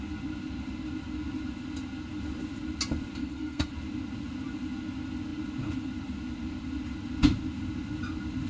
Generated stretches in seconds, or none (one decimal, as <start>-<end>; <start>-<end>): 3.2-3.7